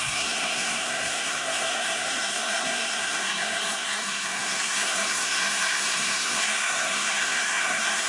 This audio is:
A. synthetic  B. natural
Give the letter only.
A